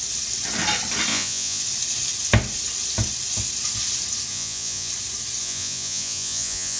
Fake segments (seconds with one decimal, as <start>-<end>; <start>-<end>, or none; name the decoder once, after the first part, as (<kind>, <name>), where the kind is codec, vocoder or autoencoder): 1.1-1.6 (vocoder, Vocos); 4.3-4.9; 5.4-6.8